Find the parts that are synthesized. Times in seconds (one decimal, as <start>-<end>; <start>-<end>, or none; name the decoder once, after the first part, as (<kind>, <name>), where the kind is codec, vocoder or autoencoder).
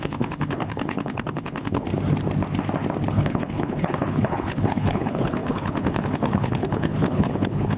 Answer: 0.0-1.9 (codec, HILCodec); 3.1-7.8